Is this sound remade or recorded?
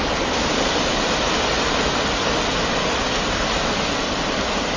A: recorded